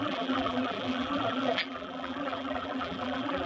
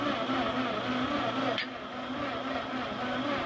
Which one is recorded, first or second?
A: second